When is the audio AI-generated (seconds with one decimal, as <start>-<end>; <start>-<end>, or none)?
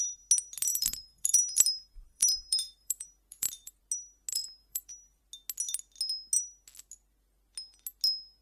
0.7-3.8; 4.3-5.2